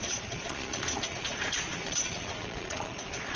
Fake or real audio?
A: fake